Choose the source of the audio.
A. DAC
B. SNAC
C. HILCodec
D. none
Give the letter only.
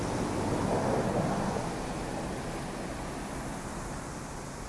D